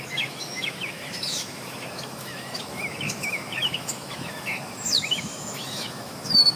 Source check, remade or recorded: remade